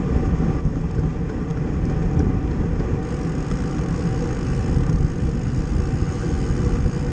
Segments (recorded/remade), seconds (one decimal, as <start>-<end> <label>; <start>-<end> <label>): 0.0-7.1 recorded